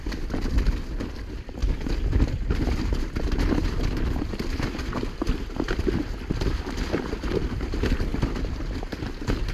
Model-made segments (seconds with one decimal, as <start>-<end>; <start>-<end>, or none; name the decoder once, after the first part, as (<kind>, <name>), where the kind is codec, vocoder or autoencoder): none